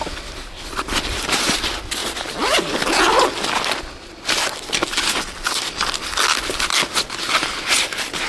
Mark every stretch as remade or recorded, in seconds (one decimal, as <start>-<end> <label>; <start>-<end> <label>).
0.0-8.3 recorded

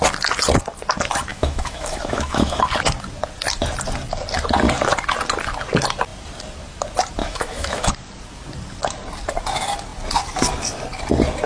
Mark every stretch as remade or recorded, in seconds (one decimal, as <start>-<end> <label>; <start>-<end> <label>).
0.0-1.3 recorded; 1.3-2.6 remade; 2.6-7.2 recorded; 7.2-7.9 remade; 7.9-11.5 recorded

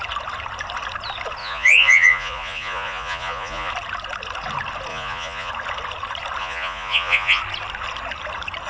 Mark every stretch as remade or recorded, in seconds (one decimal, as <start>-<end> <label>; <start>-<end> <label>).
0.0-1.4 recorded; 1.4-3.7 remade; 3.7-4.9 recorded; 4.9-5.5 remade; 5.5-6.4 recorded; 6.4-7.4 remade; 7.4-8.7 recorded

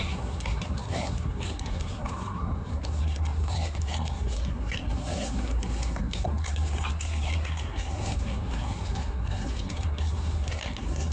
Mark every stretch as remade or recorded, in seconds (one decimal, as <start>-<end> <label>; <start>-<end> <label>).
0.0-11.1 remade

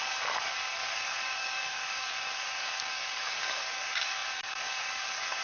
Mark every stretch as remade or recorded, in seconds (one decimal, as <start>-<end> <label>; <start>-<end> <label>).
0.0-5.4 remade

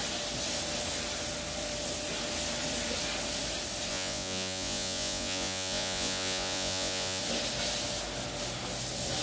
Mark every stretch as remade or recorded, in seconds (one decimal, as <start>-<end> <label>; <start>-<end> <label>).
0.0-3.9 recorded; 3.9-7.2 remade; 7.2-9.2 recorded